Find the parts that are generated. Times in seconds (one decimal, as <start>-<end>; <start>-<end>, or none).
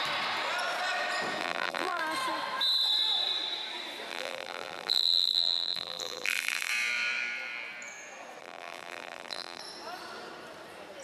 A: 1.4-2.0; 4.1-6.7; 8.4-9.6